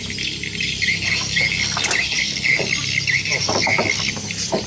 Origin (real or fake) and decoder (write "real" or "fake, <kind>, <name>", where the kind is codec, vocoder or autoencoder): real